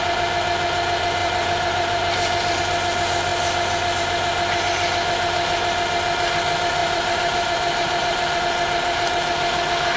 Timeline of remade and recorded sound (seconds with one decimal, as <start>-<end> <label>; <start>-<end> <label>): 0.0-1.2 recorded; 1.2-2.6 remade; 2.6-6.8 recorded; 6.8-8.4 remade; 8.4-10.0 recorded